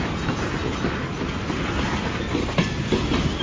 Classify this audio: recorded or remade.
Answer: recorded